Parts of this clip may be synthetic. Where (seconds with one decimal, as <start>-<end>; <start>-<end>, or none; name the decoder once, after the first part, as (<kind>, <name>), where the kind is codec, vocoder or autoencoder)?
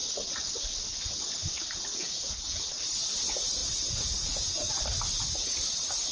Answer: 1.9-2.6 (vocoder, Vocos); 3.6-4.7